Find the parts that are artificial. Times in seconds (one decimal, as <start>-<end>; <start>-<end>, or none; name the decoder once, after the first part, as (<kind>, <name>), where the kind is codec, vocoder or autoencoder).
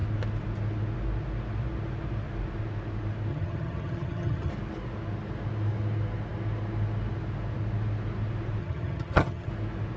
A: 3.3-4.5 (vocoder, HiFi-GAN); 8.6-9.5